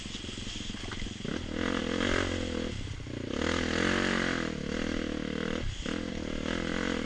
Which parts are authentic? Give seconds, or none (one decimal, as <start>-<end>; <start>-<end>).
0.0-7.1